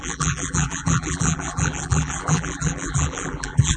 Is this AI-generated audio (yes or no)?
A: yes